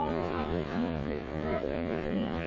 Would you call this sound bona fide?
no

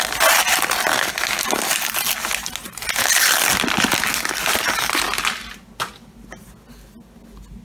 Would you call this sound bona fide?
yes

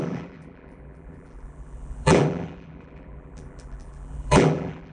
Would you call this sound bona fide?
no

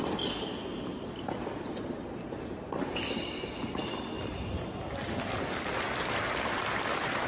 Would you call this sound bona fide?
yes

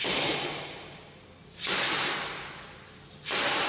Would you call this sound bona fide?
yes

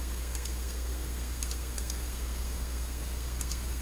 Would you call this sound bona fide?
no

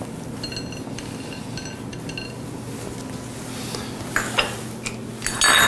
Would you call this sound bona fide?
yes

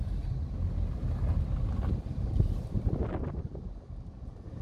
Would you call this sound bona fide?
yes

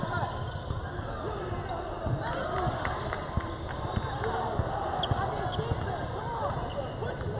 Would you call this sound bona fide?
yes